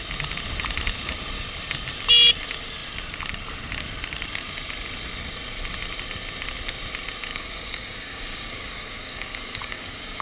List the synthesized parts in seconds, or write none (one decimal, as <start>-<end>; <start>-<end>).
7.3-10.2